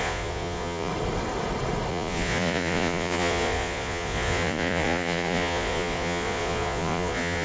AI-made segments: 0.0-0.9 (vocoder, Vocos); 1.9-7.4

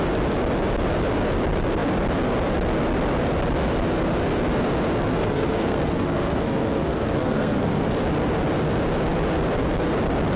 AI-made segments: 5.1-7.9 (codec, SNAC)

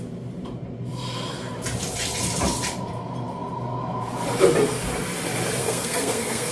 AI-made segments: 5.6-6.5 (codec, SNAC)

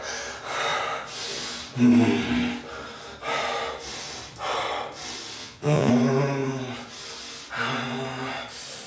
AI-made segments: 5.4-5.9 (vocoder, Vocos)

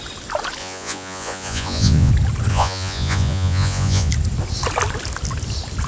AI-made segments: 0.6-2.1 (vocoder, Vocos); 2.5-4.1